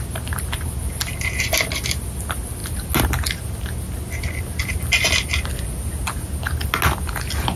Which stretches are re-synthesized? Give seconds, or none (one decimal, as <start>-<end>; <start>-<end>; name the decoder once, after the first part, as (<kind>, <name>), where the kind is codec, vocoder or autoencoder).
none